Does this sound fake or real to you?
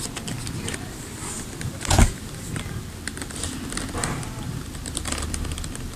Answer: real